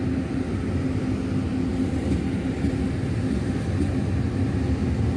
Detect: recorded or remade recorded